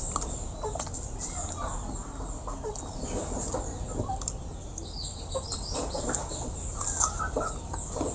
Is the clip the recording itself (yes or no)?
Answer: yes